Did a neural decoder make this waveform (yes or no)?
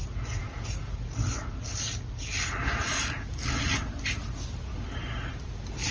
no